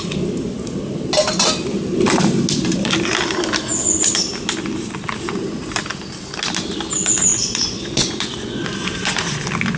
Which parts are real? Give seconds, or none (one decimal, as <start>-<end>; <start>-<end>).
0.0-7.3; 9.4-9.8